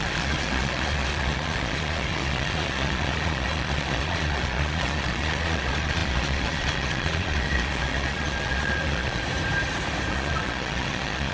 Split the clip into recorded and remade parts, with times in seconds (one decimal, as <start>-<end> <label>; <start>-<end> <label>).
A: 0.0-9.2 remade; 9.2-10.1 recorded; 10.1-11.3 remade